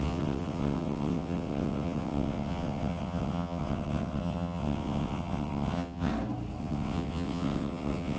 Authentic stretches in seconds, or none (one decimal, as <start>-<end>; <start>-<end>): 6.1-6.6